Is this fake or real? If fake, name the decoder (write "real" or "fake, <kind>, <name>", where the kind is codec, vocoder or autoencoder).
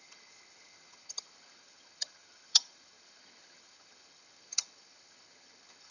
fake, vocoder, HiFi-GAN